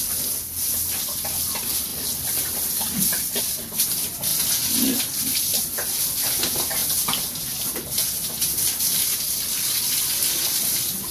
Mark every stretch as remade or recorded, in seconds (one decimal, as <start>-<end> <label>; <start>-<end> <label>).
0.0-1.9 recorded; 1.9-3.4 remade; 3.4-11.1 recorded